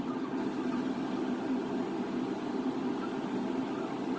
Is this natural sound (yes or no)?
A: yes